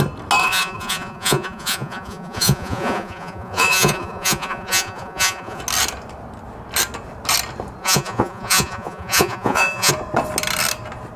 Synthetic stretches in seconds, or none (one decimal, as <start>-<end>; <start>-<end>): 0.4-5.6; 7.8-9.9